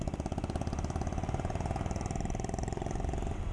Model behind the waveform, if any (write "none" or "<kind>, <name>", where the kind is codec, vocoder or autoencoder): none